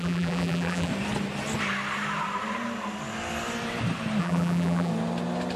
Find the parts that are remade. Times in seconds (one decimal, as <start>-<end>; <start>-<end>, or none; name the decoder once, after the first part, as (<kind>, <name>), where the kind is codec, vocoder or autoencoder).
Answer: 0.0-0.9 (vocoder, BigVGAN v2); 4.2-4.9